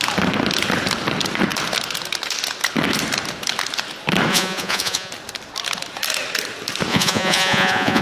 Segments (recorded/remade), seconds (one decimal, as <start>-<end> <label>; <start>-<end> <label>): 0.0-4.3 recorded; 4.3-5.1 remade; 5.1-6.9 recorded; 6.9-8.0 remade

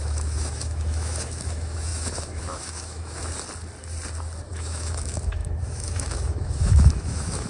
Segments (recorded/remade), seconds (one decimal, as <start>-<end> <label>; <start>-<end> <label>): 0.0-3.2 remade; 3.2-4.5 recorded; 4.5-7.5 remade

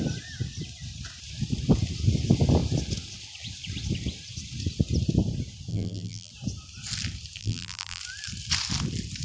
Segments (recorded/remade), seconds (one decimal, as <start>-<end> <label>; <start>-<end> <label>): 0.0-5.7 recorded; 5.7-6.3 remade; 6.3-7.4 recorded; 7.4-8.0 remade; 8.0-9.2 recorded

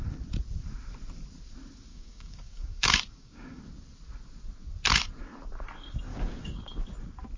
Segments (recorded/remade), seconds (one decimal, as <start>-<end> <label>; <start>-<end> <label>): 0.0-1.9 recorded; 1.9-3.6 remade; 3.6-6.1 recorded; 6.1-6.6 remade; 6.6-7.4 recorded

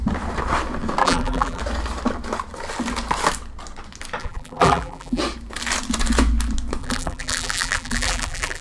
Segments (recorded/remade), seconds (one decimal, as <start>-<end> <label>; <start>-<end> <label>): 0.0-1.0 recorded; 1.0-1.6 remade; 1.6-4.2 recorded; 4.2-5.2 remade; 5.2-6.8 recorded; 6.8-8.6 remade

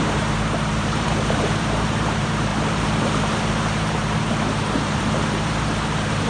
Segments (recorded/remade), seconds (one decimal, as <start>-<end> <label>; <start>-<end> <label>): 0.0-6.3 remade

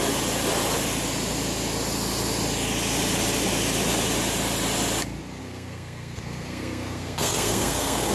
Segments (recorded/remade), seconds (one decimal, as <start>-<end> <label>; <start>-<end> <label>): 0.0-5.4 recorded; 5.4-8.1 remade

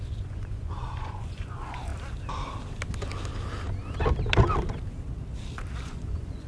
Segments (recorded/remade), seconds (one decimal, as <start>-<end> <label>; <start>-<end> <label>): 0.0-1.9 remade; 1.9-5.8 recorded; 5.8-6.5 remade